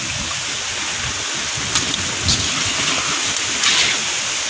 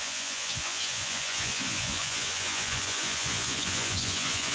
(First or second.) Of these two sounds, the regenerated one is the second